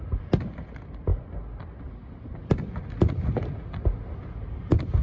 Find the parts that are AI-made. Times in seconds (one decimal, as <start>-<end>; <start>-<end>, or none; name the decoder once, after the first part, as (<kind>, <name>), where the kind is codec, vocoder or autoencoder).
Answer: none